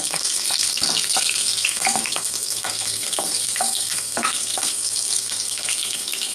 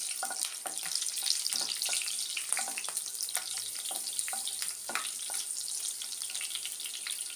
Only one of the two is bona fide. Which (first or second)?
second